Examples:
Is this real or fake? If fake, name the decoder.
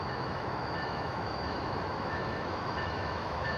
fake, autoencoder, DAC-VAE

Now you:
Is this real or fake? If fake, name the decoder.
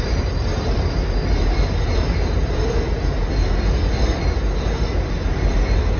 real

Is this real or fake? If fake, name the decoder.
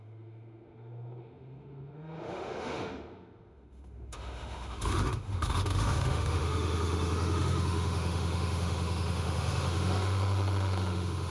fake, autoencoder, DAC-VAE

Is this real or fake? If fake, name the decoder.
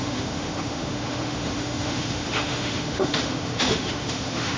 fake, autoencoder, DAC-VAE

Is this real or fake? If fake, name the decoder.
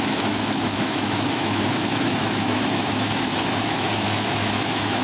fake, autoencoder, DAC-VAE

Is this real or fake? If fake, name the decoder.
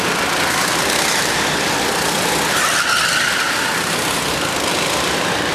real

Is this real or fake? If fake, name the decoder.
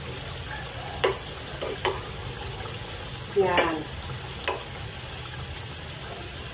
real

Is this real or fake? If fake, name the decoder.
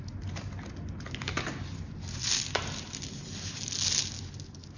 real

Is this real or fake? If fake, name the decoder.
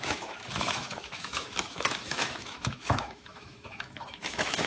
fake, autoencoder, DAC-VAE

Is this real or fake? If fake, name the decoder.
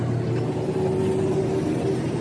real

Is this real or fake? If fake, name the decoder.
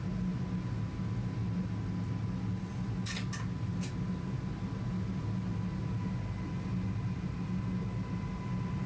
real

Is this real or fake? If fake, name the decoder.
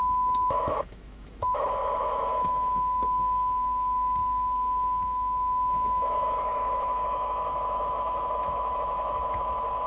fake, autoencoder, DAC-VAE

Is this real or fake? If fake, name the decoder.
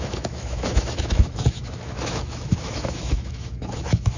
fake, autoencoder, DAC-VAE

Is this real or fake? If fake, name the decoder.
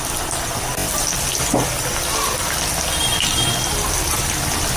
real